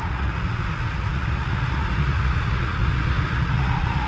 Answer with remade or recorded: remade